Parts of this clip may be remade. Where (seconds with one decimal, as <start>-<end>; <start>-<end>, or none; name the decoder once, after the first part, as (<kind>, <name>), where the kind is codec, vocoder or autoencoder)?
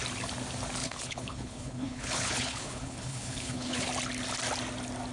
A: 0.8-3.9 (codec, HILCodec)